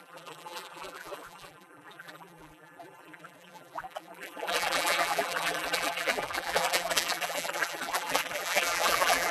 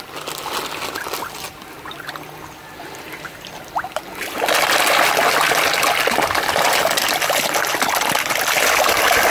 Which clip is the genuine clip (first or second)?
second